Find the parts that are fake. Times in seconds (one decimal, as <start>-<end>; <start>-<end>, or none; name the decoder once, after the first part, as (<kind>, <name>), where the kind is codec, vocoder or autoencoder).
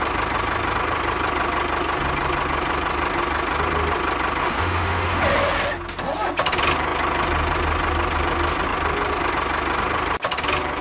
4.4-5.2 (autoencoder, DAC-VAE)